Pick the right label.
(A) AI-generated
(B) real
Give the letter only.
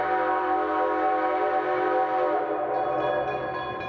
B